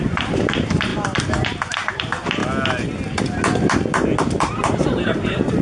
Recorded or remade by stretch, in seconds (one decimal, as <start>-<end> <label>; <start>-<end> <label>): 0.0-2.4 remade; 2.4-4.2 recorded; 4.2-5.6 remade